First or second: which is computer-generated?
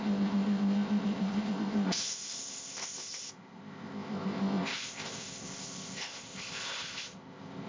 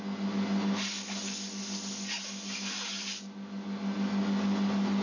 first